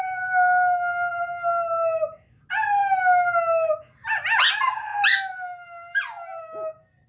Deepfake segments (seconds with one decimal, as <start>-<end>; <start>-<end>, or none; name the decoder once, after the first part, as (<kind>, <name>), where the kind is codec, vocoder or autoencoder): none